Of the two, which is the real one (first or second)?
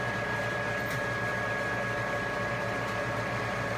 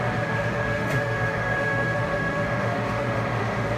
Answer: first